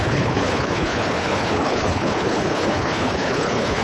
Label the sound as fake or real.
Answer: fake